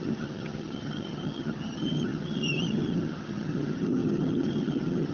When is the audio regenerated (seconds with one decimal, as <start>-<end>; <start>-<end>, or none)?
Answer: 0.0-5.1